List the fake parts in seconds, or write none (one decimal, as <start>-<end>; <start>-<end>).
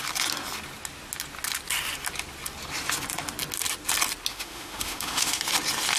4.3-5.4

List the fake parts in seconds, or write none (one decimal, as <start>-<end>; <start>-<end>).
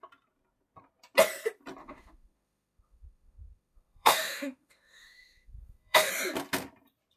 1.8-6.1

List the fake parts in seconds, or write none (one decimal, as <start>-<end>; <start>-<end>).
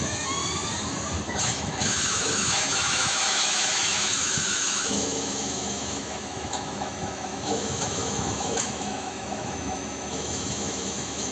0.0-0.4; 1.4-11.3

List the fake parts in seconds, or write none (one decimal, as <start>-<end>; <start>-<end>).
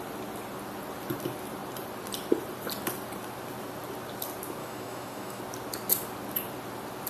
4.6-5.4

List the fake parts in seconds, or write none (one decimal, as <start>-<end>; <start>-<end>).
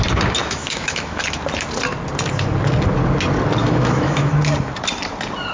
0.4-1.2; 3.6-4.3